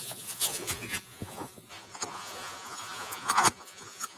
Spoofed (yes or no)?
yes